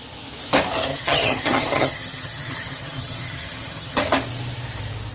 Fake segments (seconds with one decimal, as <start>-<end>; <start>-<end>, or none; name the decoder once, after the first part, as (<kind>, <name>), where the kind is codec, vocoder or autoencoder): 0.9-4.0 (vocoder, HiFi-GAN)